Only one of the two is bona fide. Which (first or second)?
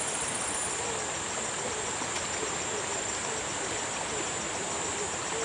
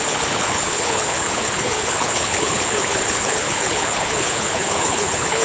first